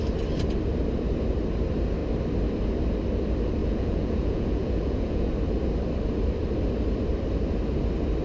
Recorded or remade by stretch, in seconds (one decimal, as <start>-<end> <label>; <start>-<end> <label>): 0.0-3.6 recorded; 3.6-5.3 remade; 5.3-8.2 recorded